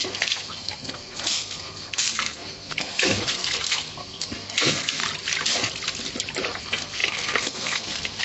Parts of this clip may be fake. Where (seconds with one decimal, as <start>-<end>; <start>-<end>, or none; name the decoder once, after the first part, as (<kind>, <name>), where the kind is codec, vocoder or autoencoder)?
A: 0.0-5.0 (codec, SNAC); 6.6-8.2